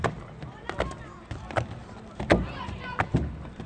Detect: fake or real real